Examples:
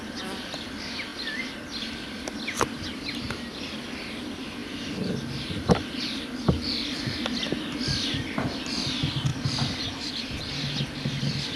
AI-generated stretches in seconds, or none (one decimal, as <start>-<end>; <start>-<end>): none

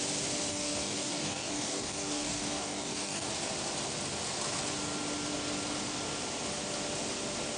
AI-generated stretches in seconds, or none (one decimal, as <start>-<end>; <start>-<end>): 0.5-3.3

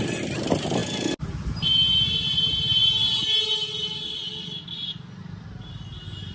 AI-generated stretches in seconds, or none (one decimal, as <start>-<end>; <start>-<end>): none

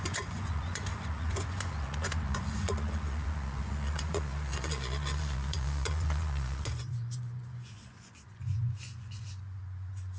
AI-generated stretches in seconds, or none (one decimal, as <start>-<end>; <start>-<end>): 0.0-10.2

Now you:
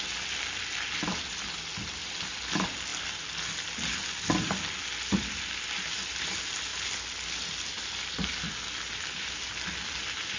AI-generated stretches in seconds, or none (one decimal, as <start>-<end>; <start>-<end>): none

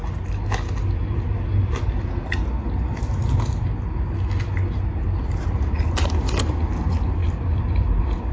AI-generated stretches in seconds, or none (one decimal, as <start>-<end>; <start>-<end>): 5.0-8.3